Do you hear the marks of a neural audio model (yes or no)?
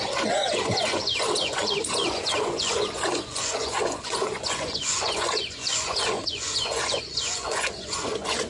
yes